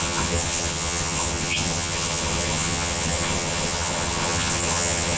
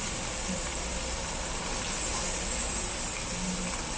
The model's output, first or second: first